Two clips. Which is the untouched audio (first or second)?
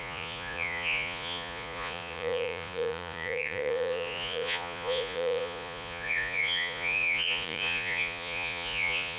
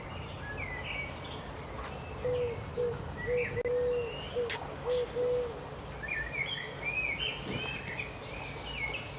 second